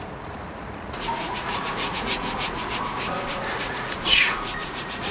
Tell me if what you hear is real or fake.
fake